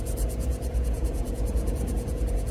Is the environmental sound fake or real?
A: fake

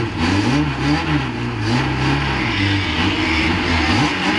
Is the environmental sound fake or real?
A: real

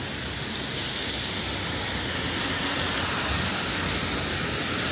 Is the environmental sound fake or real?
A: real